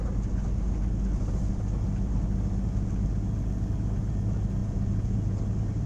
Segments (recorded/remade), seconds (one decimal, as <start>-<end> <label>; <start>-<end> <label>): 0.0-4.6 recorded; 4.6-5.4 remade; 5.4-5.9 recorded